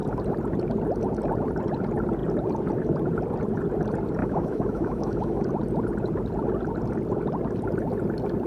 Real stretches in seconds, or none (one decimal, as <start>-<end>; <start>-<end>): 0.0-4.2; 5.4-8.5